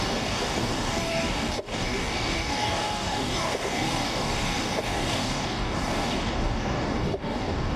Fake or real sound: fake